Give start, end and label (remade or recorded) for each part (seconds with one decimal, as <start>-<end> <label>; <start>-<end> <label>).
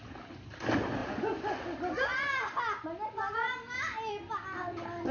0.0-5.1 recorded